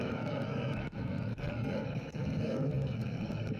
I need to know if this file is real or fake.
fake